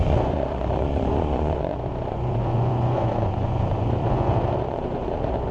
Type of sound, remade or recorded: remade